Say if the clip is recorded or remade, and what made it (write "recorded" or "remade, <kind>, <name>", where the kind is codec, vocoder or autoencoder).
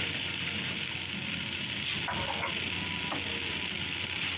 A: recorded